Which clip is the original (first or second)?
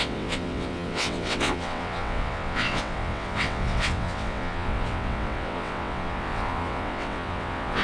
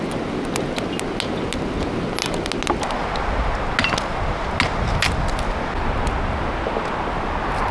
second